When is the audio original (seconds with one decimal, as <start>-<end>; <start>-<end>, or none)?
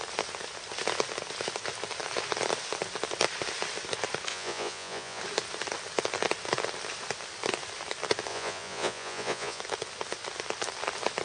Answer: 0.0-4.3; 5.2-8.3; 9.6-11.2